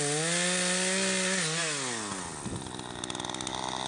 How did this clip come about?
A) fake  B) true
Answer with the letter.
B